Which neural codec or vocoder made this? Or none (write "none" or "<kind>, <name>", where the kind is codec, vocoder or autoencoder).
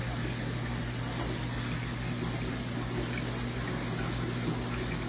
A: none